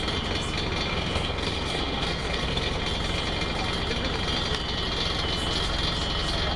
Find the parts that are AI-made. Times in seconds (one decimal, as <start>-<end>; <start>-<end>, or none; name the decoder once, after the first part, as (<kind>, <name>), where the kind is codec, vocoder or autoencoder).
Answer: 0.9-2.8 (codec, SNAC)

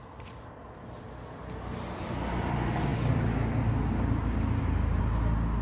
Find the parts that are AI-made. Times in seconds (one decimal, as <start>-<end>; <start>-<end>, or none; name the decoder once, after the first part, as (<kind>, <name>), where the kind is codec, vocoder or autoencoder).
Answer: none

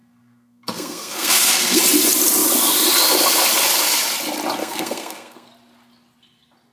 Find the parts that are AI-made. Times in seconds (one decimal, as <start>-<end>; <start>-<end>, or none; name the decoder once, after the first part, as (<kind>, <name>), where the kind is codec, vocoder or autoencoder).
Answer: 0.0-1.8 (codec, SNAC); 4.6-5.5

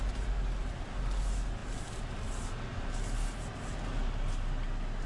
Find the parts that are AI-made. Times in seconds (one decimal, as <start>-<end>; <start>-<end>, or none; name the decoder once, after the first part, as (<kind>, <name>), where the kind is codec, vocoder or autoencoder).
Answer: none

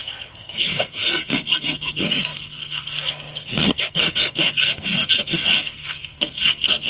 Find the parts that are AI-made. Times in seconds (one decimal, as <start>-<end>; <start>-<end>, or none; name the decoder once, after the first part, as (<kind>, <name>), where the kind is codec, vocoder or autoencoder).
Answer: 0.0-6.9 (codec, SNAC)

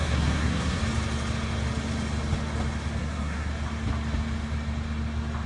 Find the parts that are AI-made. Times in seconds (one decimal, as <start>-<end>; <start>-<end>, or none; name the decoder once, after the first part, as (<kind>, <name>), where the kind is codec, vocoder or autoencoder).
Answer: 0.0-0.8 (codec, SNAC); 3.0-3.5

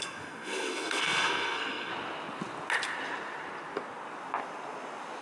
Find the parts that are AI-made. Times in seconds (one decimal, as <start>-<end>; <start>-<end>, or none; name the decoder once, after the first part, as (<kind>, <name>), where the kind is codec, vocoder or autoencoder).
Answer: 0.0-1.9 (codec, SNAC)